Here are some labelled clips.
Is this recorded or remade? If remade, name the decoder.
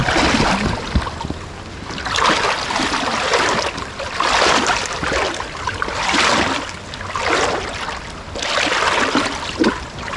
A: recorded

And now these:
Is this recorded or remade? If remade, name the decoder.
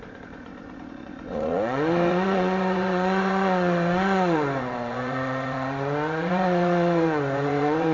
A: remade, vocoder, Vocos